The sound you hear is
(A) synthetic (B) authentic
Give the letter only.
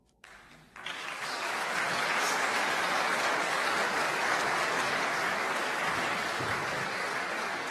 A